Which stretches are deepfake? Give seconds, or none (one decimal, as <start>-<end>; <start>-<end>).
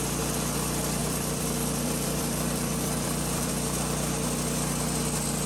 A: 1.0-3.5